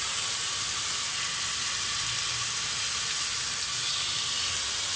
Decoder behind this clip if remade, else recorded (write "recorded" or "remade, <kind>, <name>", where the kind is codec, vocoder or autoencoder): recorded